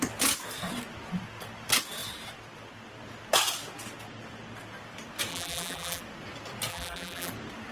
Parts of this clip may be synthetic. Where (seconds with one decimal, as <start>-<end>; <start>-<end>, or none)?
5.3-6.0; 6.7-7.3